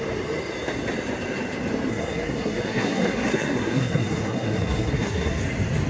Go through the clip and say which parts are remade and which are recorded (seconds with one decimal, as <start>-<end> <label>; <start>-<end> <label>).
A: 0.0-1.9 recorded; 1.9-5.4 remade; 5.4-5.9 recorded